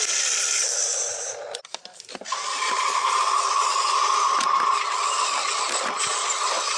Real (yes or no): yes